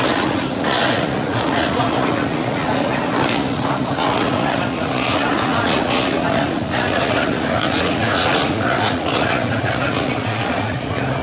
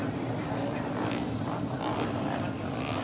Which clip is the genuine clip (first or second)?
second